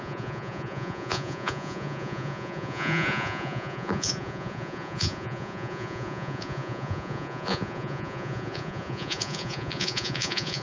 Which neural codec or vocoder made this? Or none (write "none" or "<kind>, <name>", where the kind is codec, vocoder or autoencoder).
vocoder, Vocos